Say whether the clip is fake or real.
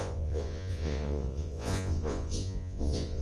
fake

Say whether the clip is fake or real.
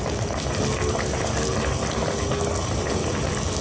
real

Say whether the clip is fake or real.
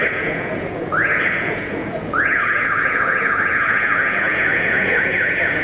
fake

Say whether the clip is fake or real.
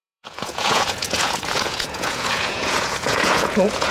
fake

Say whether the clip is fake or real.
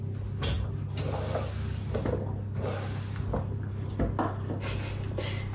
real